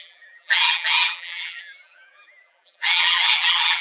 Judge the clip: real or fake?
fake